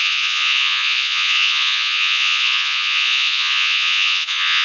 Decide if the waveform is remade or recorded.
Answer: remade